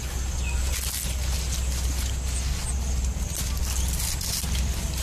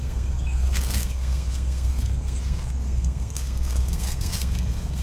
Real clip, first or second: first